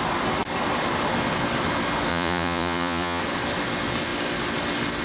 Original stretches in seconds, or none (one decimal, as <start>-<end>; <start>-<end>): 0.0-2.1; 3.2-5.0